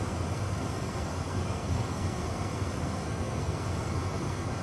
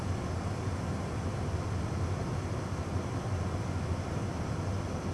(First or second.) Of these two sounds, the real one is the second